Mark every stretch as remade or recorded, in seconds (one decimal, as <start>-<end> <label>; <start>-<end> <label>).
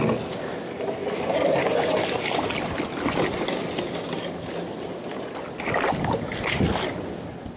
0.0-7.6 recorded